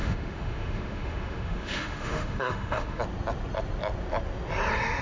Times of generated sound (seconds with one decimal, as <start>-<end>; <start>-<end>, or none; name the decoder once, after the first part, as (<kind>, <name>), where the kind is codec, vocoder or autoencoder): 0.0-3.0 (autoencoder, DAC-VAE)